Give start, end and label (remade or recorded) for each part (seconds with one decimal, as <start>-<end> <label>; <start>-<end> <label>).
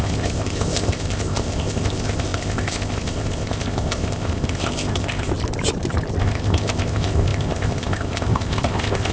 0.0-5.3 remade; 5.3-6.2 recorded; 6.2-9.1 remade